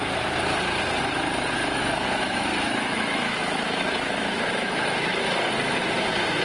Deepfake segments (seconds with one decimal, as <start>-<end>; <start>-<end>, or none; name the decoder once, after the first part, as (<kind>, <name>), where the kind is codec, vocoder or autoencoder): 1.6-5.2 (autoencoder, DAC-VAE)